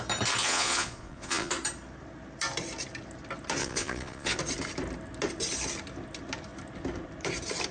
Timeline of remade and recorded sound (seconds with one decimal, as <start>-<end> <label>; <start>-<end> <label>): 0.0-0.4 recorded; 0.4-1.5 remade; 1.5-3.6 recorded; 3.6-4.4 remade; 4.4-7.7 recorded

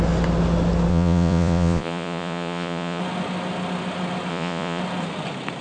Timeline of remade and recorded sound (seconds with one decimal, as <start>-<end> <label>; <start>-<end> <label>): 0.0-0.9 recorded; 0.9-3.0 remade; 3.0-4.3 recorded; 4.3-4.8 remade; 4.8-5.6 recorded